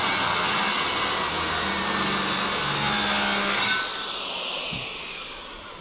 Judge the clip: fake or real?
real